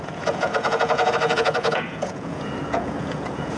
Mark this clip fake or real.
fake